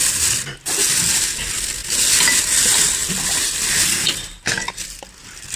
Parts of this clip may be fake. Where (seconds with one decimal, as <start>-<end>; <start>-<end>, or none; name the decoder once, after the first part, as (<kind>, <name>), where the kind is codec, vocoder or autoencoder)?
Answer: none

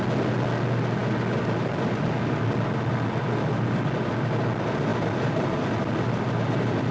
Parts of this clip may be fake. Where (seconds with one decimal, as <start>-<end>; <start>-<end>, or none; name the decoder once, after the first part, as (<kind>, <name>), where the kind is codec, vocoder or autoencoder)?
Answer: 4.9-6.9 (vocoder, BigVGAN v2)

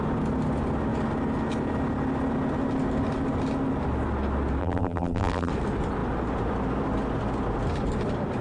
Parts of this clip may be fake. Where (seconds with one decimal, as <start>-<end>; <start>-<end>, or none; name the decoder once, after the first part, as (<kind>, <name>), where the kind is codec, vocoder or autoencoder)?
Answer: 4.6-5.5 (vocoder, BigVGAN v2)

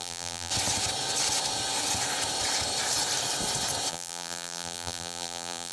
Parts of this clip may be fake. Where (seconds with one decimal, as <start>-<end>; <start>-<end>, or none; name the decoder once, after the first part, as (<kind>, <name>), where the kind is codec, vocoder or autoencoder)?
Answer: 0.0-0.5 (vocoder, BigVGAN v2); 3.9-5.7

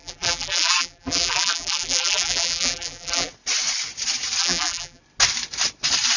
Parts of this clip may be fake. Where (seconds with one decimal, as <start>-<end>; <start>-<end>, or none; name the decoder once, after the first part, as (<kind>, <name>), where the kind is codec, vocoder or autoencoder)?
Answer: 0.0-3.3 (vocoder, BigVGAN v2); 4.4-5.0

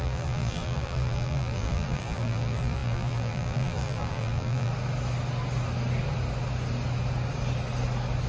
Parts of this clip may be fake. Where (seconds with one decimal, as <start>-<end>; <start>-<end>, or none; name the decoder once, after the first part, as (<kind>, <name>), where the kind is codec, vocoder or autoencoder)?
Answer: 0.0-4.7 (vocoder, BigVGAN v2)

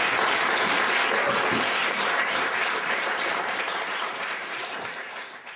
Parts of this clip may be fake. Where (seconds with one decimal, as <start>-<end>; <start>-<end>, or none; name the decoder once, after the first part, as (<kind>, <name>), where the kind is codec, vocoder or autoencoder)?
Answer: 1.8-5.6 (vocoder, BigVGAN v2)